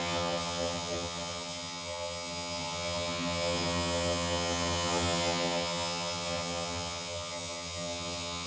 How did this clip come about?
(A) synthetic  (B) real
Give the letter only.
A